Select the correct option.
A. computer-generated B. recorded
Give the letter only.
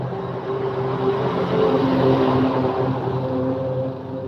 B